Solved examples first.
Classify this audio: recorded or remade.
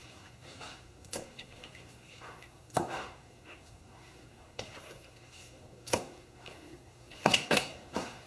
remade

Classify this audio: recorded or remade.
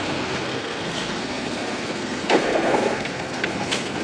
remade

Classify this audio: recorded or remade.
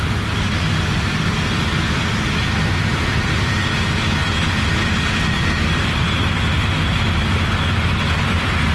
recorded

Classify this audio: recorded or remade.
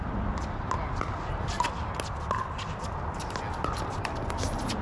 recorded